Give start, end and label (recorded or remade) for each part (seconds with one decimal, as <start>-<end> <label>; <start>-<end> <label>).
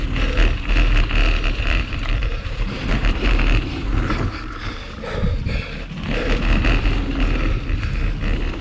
0.0-1.6 recorded; 1.6-3.9 remade; 3.9-8.6 recorded